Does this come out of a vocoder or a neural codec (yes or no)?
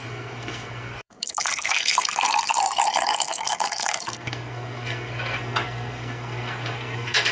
yes